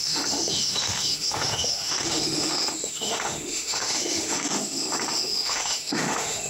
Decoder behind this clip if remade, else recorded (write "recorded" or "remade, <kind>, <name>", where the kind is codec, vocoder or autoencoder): remade, autoencoder, DAC-VAE